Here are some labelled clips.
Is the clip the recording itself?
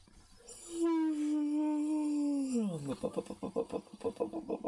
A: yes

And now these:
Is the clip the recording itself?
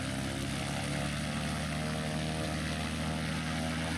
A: yes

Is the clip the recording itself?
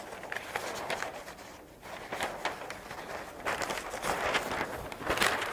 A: yes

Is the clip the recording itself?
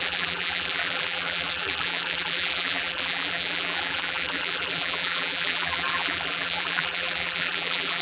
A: no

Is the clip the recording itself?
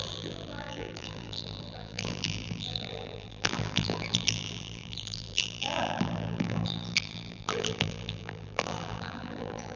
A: no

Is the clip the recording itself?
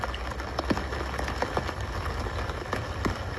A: yes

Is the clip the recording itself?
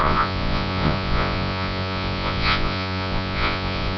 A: no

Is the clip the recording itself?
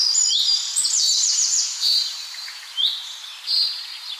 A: no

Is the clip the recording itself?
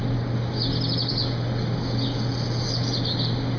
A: yes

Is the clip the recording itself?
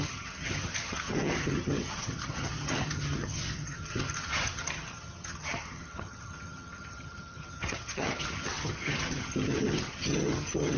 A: no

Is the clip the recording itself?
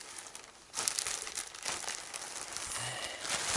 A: yes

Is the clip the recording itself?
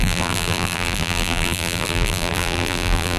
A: no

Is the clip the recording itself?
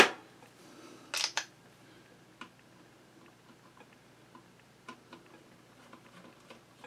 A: yes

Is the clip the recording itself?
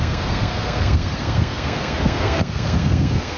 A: no